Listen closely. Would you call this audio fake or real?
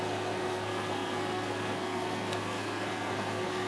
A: fake